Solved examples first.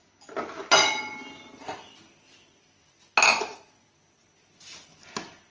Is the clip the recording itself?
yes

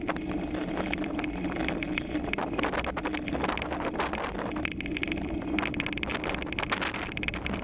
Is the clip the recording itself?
yes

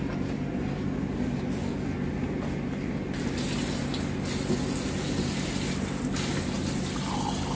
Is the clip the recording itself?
yes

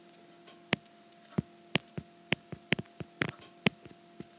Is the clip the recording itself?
yes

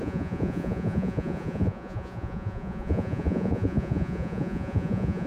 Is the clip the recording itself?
no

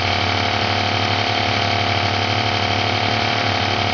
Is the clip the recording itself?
yes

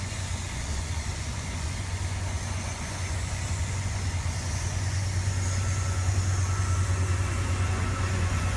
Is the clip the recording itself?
no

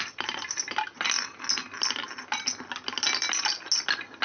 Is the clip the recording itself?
yes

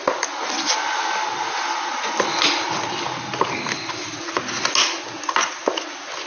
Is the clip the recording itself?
yes